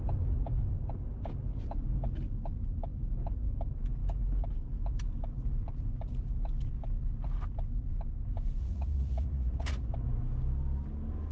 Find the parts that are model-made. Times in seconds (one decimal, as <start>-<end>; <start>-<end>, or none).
8.6-9.8